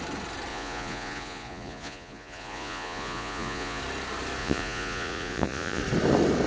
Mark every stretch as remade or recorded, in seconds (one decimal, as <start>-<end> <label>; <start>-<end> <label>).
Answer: 0.0-0.5 recorded; 0.5-3.8 remade; 3.8-4.4 recorded; 4.4-5.8 remade; 5.8-6.5 recorded